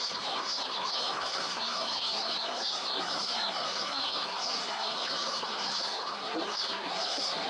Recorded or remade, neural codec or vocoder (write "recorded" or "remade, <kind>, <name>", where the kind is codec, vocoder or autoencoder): remade, codec, SNAC